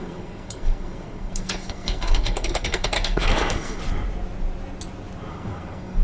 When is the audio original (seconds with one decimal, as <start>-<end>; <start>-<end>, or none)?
3.8-5.3